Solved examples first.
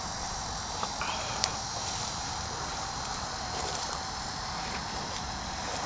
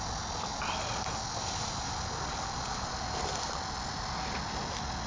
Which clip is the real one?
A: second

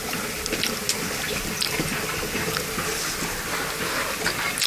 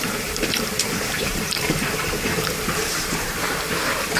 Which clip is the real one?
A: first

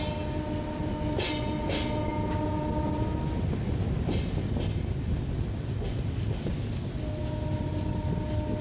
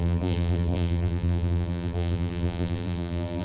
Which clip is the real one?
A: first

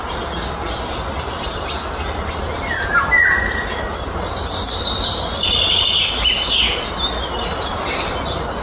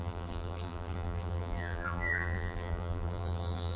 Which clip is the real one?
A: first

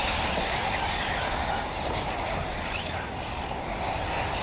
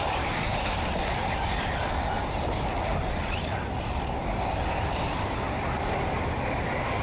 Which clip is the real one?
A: first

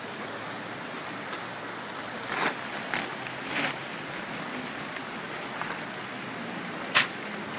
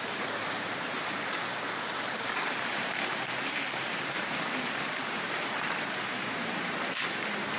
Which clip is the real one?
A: first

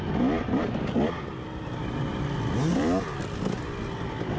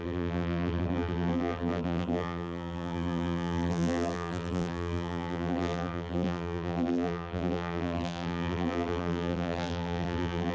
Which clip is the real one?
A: first